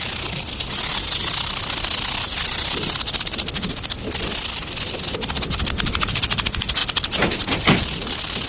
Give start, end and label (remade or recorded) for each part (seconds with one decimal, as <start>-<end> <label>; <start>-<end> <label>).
0.0-8.5 recorded